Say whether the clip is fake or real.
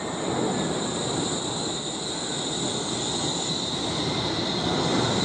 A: real